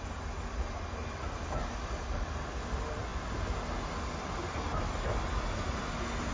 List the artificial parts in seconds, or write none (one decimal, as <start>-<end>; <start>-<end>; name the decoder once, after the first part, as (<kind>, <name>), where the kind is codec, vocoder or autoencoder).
none